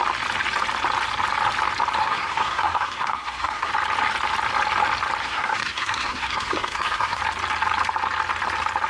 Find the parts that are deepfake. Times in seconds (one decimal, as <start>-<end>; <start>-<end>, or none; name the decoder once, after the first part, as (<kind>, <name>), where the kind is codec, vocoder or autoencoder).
2.0-3.7 (codec, SNAC); 5.2-7.2